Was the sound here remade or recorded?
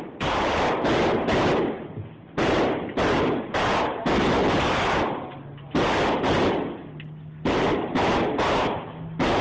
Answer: recorded